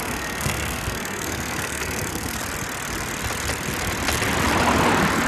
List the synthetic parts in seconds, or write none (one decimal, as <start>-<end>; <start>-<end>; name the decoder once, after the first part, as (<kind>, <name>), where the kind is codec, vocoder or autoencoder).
0.0-2.4 (codec, SNAC)